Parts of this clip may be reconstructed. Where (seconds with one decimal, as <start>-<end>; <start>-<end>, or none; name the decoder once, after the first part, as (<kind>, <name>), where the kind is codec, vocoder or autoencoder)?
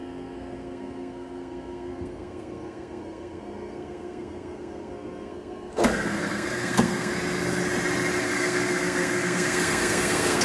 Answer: 0.0-7.1 (codec, SNAC); 8.2-10.4